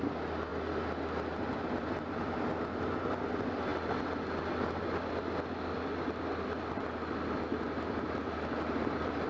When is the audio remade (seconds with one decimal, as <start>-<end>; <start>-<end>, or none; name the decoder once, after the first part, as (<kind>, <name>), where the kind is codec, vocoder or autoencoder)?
none